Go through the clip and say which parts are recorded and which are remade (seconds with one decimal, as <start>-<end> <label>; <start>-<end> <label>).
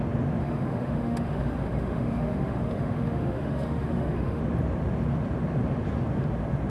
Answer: 0.0-0.4 recorded; 0.4-4.4 remade; 4.4-6.7 recorded